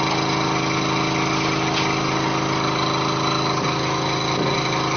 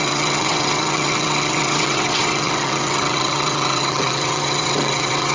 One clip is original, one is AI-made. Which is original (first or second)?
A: first